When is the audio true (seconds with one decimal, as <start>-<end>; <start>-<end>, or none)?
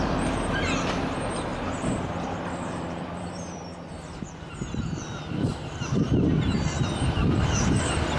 0.0-1.5; 4.5-7.2